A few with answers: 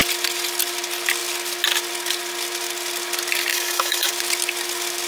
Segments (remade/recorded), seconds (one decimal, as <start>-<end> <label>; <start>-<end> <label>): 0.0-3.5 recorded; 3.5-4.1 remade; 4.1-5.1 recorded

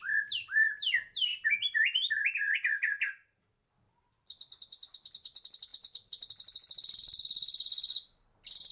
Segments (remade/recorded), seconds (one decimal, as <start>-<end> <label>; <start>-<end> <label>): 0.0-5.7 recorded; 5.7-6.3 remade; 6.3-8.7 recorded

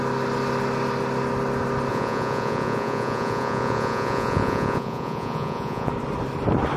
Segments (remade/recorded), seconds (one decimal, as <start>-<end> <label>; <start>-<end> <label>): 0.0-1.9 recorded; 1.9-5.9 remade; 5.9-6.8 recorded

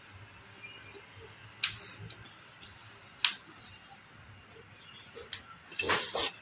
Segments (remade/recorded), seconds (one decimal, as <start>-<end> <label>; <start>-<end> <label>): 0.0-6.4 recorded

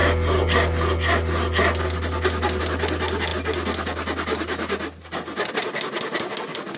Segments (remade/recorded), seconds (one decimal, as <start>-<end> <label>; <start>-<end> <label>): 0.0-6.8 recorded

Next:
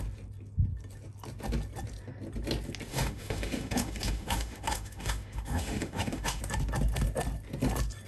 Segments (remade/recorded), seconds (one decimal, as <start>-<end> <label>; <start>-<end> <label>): 0.0-2.9 recorded; 2.9-6.4 remade; 6.4-8.1 recorded

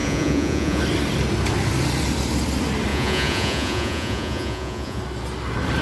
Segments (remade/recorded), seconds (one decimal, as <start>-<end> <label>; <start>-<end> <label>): 0.0-0.8 remade; 0.8-2.9 recorded; 2.9-5.0 remade; 5.0-5.8 recorded

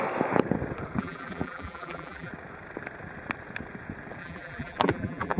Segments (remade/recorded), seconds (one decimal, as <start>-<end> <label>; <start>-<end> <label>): 0.0-1.0 recorded; 1.0-2.3 remade; 2.3-4.2 recorded; 4.2-5.4 remade